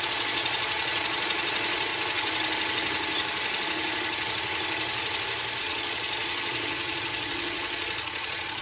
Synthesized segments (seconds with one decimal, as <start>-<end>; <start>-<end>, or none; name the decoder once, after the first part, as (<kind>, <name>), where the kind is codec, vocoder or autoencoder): 0.0-1.9 (vocoder, Vocos); 5.6-8.6